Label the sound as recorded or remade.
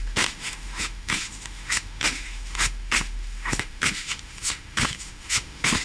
remade